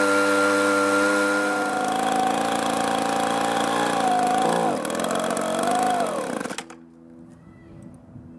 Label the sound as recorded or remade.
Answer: recorded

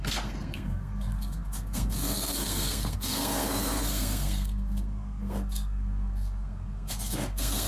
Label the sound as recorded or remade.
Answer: remade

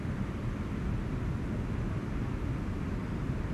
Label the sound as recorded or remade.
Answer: recorded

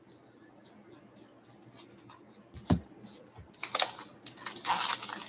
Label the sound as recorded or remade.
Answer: recorded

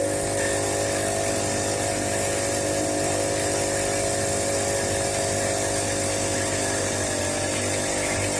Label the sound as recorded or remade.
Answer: recorded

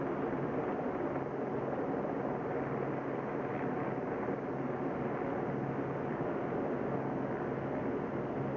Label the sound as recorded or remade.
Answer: recorded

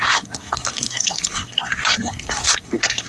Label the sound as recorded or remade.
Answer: remade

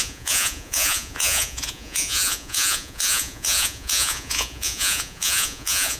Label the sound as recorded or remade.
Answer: remade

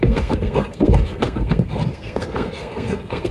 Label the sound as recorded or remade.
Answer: remade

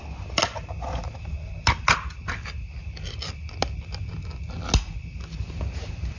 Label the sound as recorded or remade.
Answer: recorded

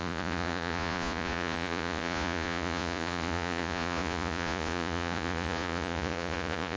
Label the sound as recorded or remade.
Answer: remade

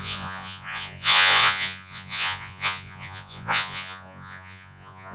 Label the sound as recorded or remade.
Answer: remade